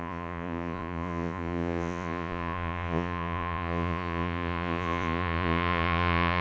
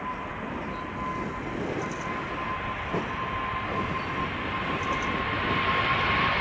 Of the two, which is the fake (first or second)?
first